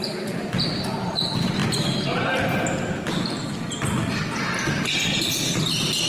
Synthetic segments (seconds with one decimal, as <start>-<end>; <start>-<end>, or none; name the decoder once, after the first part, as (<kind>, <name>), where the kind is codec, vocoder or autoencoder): 4.6-5.6 (vocoder, BigVGAN v2)